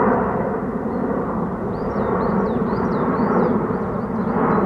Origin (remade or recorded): remade